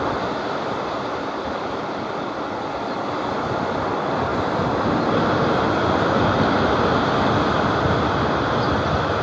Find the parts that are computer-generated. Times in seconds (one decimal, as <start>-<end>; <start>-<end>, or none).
none

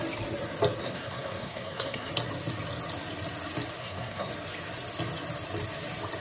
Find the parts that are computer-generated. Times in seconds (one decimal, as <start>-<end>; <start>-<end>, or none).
0.8-2.1; 3.8-4.3

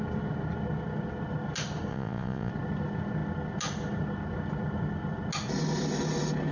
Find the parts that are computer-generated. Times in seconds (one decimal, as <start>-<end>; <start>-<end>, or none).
1.9-2.5

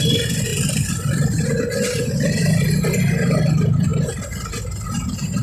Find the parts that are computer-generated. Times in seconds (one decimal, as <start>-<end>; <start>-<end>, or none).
0.5-1.4

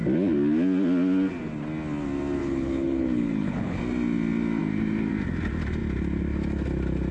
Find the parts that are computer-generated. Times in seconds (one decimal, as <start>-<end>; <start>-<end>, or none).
2.4-3.8

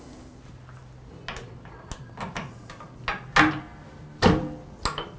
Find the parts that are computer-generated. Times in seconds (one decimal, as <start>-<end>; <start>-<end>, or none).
none

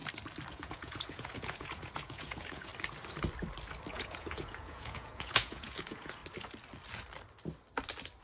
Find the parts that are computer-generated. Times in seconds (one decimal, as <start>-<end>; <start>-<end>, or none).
0.5-2.7; 3.9-6.2